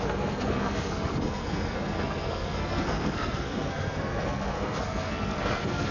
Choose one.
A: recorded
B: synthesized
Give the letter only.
B